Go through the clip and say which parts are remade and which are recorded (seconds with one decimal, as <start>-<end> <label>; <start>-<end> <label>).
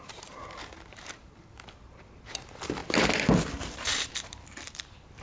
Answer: 0.0-2.8 remade; 2.8-3.5 recorded; 3.5-5.2 remade